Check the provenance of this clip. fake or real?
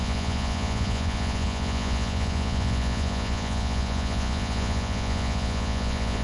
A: fake